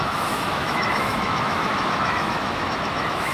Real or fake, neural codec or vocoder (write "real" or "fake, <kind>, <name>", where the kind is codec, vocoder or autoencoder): fake, autoencoder, DAC-VAE